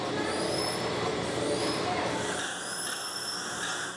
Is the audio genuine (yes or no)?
yes